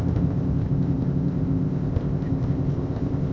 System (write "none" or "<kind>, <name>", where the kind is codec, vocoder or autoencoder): codec, ZipCodec